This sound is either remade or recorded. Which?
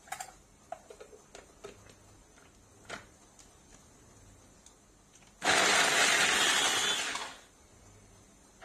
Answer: recorded